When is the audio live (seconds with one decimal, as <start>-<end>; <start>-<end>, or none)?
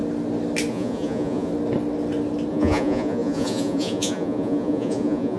0.0-0.7; 1.5-2.5